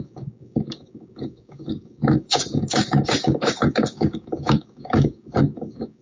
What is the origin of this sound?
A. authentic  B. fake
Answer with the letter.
B